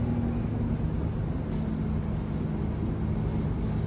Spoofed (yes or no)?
no